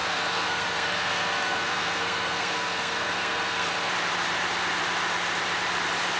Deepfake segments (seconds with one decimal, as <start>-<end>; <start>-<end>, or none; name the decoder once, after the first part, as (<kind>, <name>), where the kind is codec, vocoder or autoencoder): 0.0-3.7 (codec, SNAC)